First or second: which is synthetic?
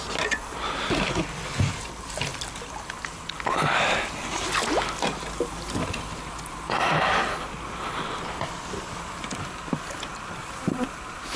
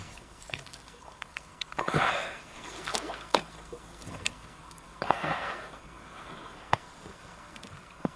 second